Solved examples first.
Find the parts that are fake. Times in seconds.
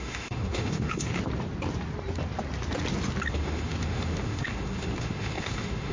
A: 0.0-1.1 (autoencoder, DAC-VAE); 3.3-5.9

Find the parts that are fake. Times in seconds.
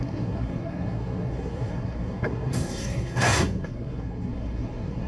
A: 0.0-5.1 (codec, SNAC)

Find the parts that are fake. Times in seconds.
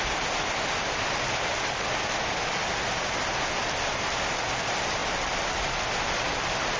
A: none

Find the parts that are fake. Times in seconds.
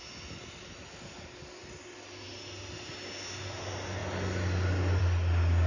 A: none